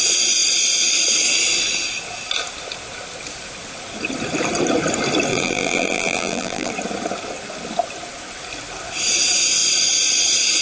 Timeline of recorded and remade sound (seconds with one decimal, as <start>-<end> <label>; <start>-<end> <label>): 0.0-5.3 recorded; 5.3-6.7 remade; 6.7-10.6 recorded